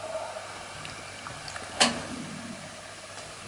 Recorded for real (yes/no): yes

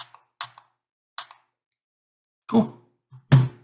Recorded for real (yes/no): yes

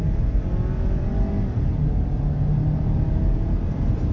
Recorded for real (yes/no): yes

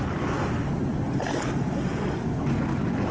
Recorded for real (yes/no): yes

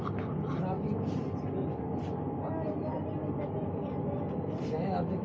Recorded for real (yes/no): yes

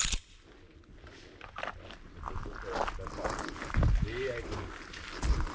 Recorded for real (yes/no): yes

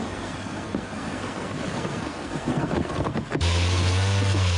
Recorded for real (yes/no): no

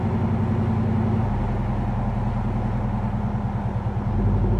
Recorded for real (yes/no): yes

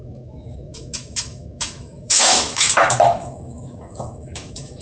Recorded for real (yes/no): no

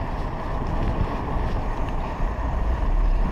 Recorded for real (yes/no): no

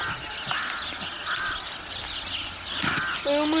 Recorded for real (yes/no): yes